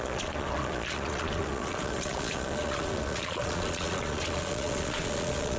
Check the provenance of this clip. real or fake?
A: fake